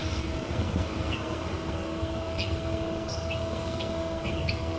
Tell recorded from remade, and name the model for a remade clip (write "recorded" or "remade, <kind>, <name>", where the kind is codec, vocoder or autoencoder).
remade, codec, SNAC